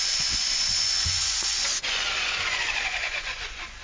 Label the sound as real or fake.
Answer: fake